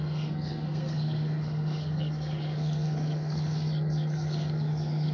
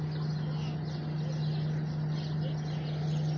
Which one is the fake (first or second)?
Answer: first